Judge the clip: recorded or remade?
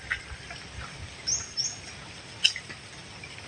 recorded